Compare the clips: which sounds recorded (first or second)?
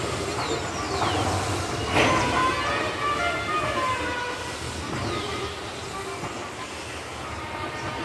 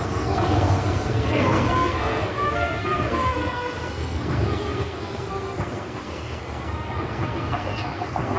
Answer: first